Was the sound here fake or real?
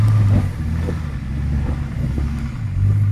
real